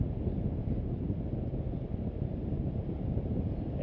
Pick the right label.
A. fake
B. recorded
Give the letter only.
B